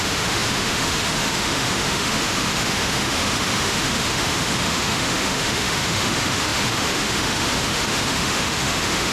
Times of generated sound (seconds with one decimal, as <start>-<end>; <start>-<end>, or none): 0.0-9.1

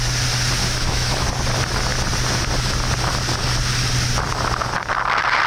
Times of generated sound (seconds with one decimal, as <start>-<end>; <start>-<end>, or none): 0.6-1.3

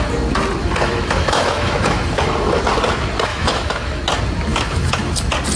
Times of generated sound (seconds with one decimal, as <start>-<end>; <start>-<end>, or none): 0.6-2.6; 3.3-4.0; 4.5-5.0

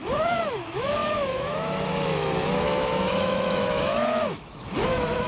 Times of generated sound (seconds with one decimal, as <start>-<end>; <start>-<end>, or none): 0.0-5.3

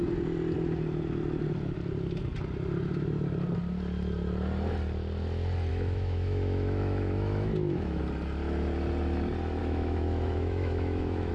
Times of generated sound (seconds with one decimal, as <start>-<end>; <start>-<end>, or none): 5.7-8.0; 9.6-11.3

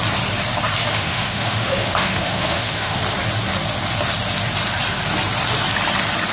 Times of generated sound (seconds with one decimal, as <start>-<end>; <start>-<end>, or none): 0.9-3.0

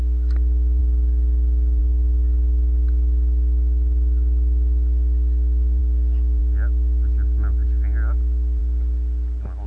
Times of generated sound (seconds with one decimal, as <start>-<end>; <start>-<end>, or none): none

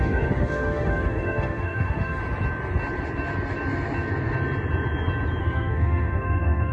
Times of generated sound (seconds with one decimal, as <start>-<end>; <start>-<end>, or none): 0.0-2.2; 5.4-6.7